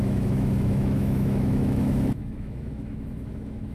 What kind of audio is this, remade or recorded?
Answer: remade